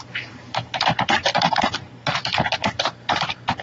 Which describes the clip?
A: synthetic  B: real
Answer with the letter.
A